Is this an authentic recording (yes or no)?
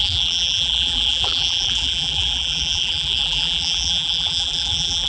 no